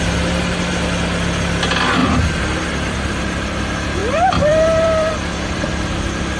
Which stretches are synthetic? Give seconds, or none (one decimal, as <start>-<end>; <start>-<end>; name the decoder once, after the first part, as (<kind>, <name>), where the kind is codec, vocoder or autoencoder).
4.0-5.1 (vocoder, BigVGAN v2)